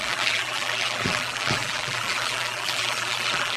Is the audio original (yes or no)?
no